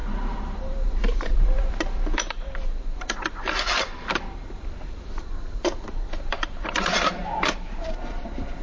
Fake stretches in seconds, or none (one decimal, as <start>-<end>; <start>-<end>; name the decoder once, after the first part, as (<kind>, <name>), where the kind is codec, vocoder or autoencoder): 0.0-8.6 (vocoder, BigVGAN v2)